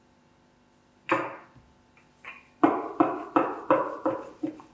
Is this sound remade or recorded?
recorded